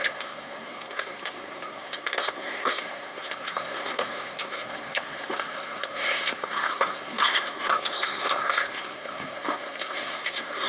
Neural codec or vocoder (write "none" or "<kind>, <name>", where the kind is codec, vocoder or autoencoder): codec, SNAC